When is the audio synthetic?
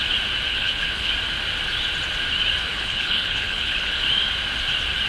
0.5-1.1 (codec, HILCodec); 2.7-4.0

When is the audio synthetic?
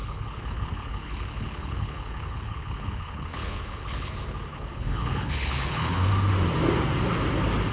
0.0-4.1 (codec, HILCodec); 4.5-6.1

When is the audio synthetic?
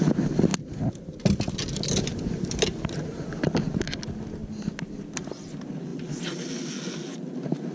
none